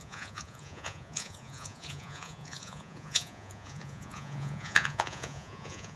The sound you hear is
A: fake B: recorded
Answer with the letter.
A